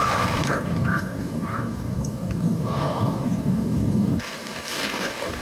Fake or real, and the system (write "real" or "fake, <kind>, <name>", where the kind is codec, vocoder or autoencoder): fake, codec, DAC